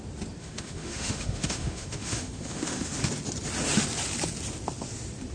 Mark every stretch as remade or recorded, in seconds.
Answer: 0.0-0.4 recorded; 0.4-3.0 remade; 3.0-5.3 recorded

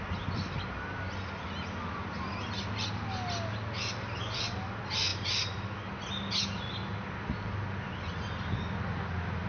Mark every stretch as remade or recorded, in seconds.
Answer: 0.0-9.5 recorded

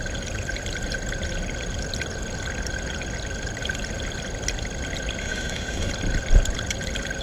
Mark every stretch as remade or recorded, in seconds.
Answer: 0.0-5.2 recorded; 5.2-5.9 remade; 5.9-7.2 recorded

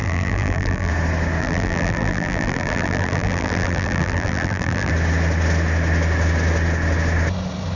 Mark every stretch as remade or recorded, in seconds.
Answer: 0.0-0.9 remade; 0.9-1.4 recorded; 1.4-4.9 remade; 4.9-7.8 recorded

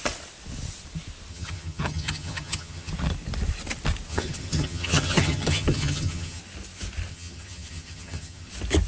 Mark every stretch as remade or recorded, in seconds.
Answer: 0.0-1.3 recorded; 1.3-2.9 remade; 2.9-4.1 recorded; 4.1-6.4 remade; 6.4-7.1 recorded; 7.1-8.5 remade; 8.5-8.9 recorded

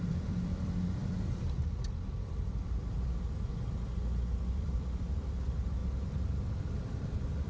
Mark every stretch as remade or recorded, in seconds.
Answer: 0.0-1.0 remade; 1.0-2.5 recorded; 2.5-3.5 remade; 3.5-4.5 recorded; 4.5-7.5 remade

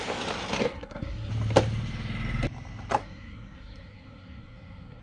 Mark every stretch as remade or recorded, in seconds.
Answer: 0.0-0.6 recorded; 0.6-1.3 remade; 1.3-3.0 recorded; 3.0-5.0 remade